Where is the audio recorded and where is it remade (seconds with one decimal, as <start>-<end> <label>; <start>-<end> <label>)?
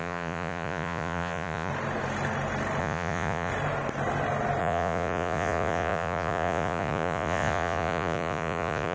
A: 0.0-1.7 remade; 1.7-2.8 recorded; 2.8-3.5 remade; 3.5-4.6 recorded; 4.6-8.9 remade